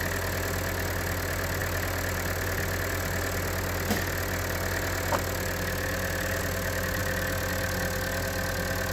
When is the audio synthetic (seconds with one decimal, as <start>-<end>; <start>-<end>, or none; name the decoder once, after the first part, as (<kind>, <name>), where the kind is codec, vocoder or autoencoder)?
none